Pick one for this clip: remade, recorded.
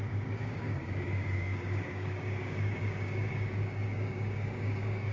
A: remade